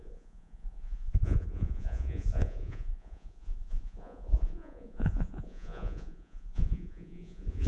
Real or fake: fake